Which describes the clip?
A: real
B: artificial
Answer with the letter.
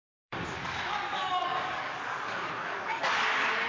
B